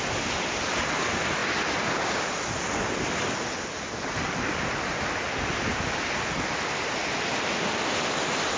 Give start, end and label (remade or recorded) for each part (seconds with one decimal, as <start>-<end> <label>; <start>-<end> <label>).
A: 0.0-8.6 recorded